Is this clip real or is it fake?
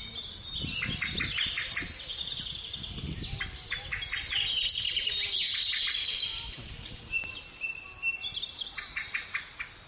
real